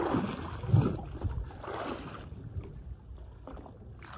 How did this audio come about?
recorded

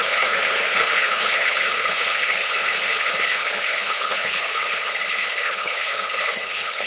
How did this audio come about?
remade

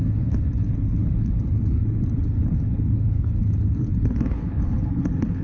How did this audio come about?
remade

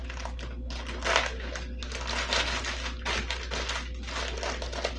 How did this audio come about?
recorded